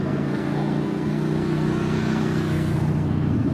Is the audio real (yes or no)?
no